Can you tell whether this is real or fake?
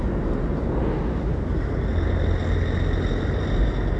real